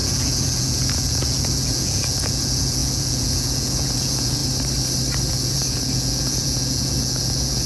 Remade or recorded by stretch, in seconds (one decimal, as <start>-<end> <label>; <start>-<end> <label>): 0.0-4.4 remade; 4.4-5.3 recorded; 5.3-7.7 remade